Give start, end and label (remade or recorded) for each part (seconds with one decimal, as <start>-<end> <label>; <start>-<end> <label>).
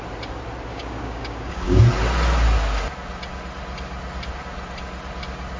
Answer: 0.0-0.7 recorded; 0.7-1.8 remade; 1.8-5.6 recorded